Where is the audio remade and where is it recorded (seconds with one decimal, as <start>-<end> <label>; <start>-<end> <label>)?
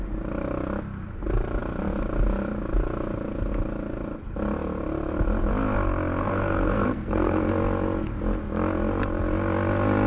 0.0-6.2 recorded; 6.2-7.5 remade; 7.5-10.1 recorded